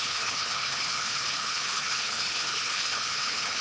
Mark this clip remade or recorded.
remade